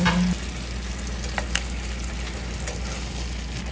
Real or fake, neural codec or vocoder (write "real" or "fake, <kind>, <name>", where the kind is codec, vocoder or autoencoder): real